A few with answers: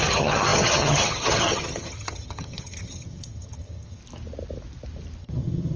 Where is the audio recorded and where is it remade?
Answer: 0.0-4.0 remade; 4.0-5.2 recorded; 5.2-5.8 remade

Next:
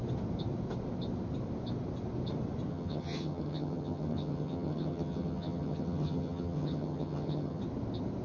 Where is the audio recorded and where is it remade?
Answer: 0.0-2.7 recorded; 2.7-7.6 remade; 7.6-8.2 recorded

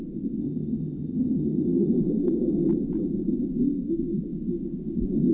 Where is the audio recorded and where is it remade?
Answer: 0.0-0.4 recorded; 0.4-1.9 remade; 1.9-5.3 recorded

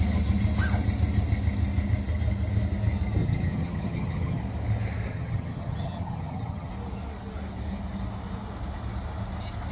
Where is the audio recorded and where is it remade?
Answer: 0.0-3.2 recorded; 3.2-4.4 remade; 4.4-5.1 recorded; 5.1-6.7 remade; 6.7-9.7 recorded

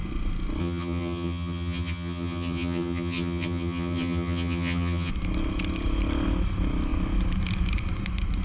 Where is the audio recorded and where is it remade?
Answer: 0.0-0.6 recorded; 0.6-5.1 remade; 5.1-8.4 recorded

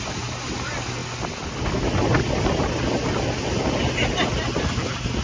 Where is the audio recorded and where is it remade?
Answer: 0.0-5.2 recorded